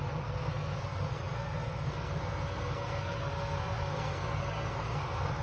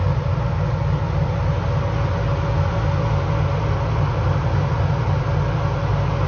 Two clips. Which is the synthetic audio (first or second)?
first